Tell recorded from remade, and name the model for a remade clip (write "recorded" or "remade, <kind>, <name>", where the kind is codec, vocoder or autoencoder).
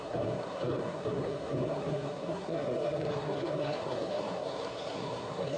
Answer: remade, codec, SNAC